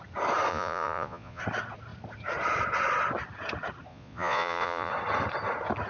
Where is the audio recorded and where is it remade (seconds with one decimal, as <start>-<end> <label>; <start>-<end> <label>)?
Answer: 0.0-0.5 recorded; 0.5-1.4 remade; 1.4-3.9 recorded; 3.9-4.9 remade; 4.9-5.9 recorded